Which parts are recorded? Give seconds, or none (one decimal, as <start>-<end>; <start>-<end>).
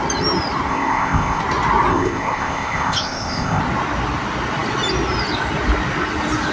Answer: 0.0-0.7; 1.4-1.9; 3.6-6.5